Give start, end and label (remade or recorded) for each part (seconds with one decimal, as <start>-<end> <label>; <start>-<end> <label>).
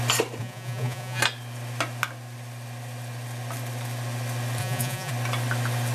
0.0-0.4 recorded; 0.4-1.2 remade; 1.2-4.6 recorded; 4.6-5.1 remade; 5.1-5.9 recorded